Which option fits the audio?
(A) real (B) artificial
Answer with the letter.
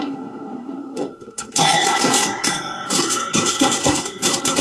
B